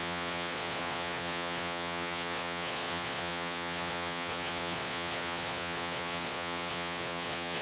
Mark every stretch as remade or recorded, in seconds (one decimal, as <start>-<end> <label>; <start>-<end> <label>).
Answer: 0.0-7.6 remade

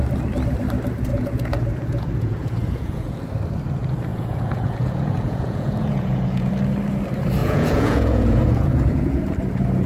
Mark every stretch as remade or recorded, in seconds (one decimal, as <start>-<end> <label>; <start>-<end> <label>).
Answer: 0.0-1.1 recorded; 1.1-3.1 remade; 3.1-4.1 recorded; 4.1-6.5 remade; 6.5-7.4 recorded; 7.4-9.2 remade; 9.2-9.9 recorded

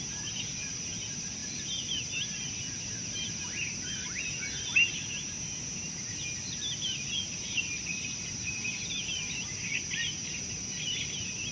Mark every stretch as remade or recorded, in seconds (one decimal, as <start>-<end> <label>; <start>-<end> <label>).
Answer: 0.0-11.5 recorded